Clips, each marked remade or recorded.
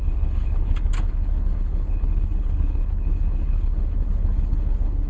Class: remade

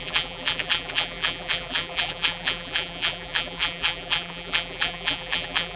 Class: remade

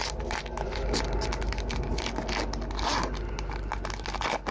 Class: recorded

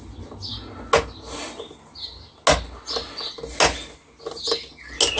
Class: recorded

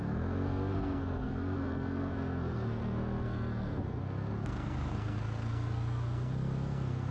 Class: remade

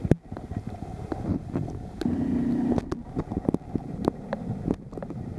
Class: recorded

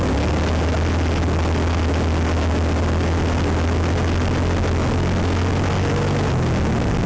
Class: recorded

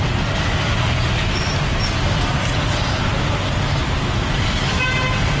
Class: recorded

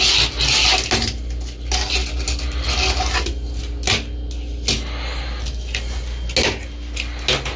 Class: recorded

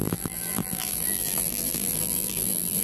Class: remade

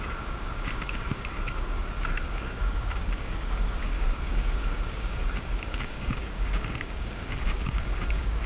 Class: remade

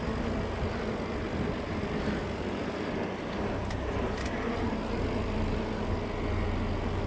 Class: recorded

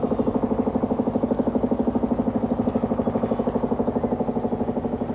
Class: recorded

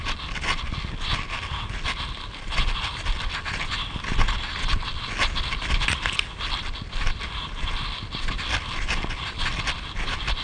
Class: recorded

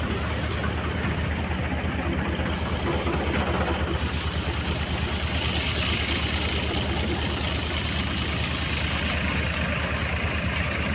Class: recorded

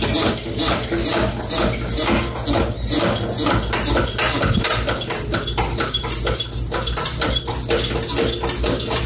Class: recorded